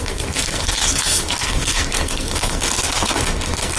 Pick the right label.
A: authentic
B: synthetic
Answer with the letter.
B